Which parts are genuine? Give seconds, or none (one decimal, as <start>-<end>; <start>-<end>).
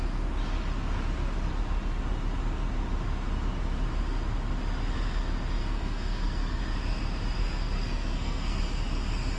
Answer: 0.0-5.6; 6.6-7.4; 8.6-9.4